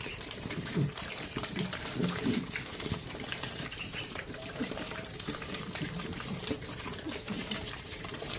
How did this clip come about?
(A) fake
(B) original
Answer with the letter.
A